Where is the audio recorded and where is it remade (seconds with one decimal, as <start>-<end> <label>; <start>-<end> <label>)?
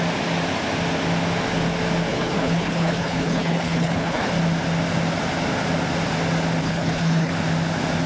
0.0-2.1 recorded; 2.1-4.3 remade; 4.3-6.6 recorded; 6.6-7.3 remade; 7.3-8.1 recorded